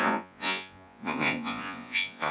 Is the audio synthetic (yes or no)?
yes